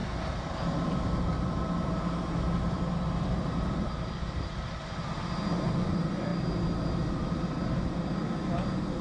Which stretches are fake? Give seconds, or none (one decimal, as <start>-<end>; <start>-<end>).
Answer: 0.0-5.0